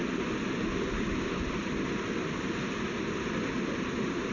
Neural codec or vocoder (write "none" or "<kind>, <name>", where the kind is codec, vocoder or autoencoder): none